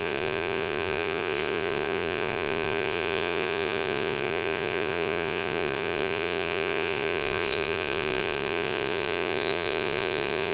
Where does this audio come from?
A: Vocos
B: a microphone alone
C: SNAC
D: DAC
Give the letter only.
A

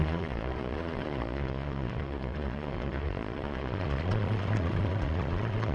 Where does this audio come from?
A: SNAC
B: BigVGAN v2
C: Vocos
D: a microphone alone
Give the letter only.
C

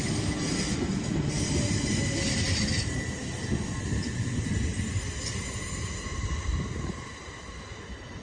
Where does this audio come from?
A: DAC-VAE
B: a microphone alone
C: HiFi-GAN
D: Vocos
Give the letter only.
B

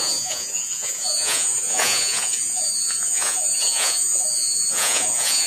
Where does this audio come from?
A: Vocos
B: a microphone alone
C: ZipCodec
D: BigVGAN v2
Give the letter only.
A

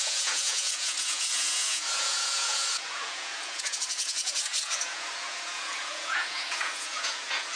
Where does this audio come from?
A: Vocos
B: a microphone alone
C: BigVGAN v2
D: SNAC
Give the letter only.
A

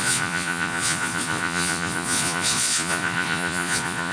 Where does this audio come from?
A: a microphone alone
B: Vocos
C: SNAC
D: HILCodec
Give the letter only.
B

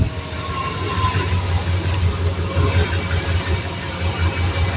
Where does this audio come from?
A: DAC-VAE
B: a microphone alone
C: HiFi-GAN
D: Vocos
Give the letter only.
B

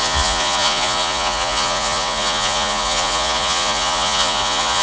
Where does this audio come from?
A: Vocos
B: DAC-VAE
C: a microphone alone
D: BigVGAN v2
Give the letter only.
A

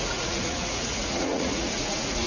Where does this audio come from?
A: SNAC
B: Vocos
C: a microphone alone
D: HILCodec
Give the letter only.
B